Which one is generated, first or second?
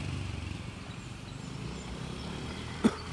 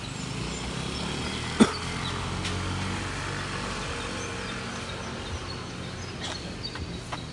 first